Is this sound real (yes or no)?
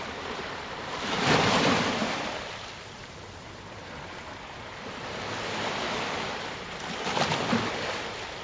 no